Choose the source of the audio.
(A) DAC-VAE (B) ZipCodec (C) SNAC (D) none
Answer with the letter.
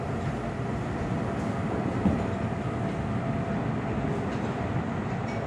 D